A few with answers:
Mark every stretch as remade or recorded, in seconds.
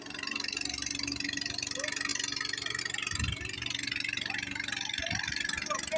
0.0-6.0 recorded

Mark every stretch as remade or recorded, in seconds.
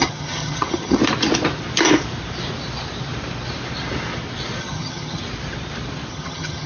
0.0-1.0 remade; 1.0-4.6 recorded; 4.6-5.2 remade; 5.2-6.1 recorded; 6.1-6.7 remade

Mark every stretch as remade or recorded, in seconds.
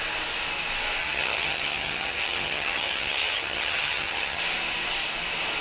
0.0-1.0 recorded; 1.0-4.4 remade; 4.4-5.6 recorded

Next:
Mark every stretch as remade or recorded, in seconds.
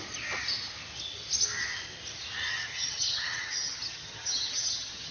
0.0-2.5 recorded; 2.5-5.1 remade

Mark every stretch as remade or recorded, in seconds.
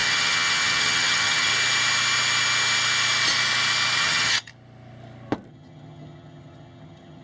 0.0-1.5 remade; 1.5-4.0 recorded; 4.0-4.5 remade; 4.5-5.5 recorded; 5.5-7.2 remade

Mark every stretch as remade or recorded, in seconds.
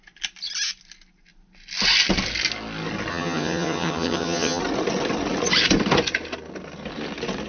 0.0-3.1 recorded; 3.1-4.6 remade; 4.6-7.5 recorded